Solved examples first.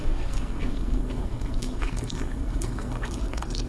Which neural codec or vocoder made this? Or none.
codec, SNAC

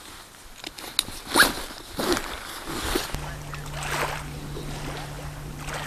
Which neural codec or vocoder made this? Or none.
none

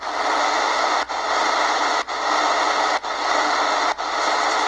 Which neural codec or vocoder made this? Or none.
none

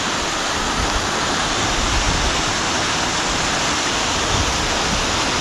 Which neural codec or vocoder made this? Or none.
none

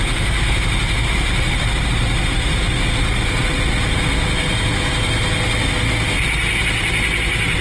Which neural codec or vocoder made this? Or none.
none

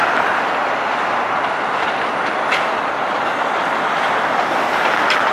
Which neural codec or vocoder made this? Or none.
none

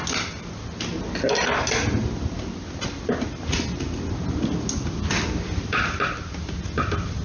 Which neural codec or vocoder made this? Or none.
none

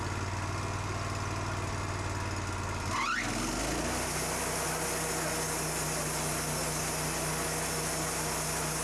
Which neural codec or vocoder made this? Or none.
none